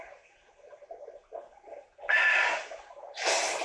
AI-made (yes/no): no